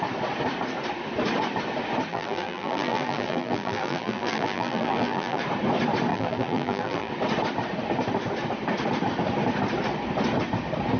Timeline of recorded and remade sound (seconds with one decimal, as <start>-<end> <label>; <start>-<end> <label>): 0.0-2.1 recorded; 2.1-5.4 remade; 5.4-6.1 recorded; 6.1-7.1 remade; 7.1-11.0 recorded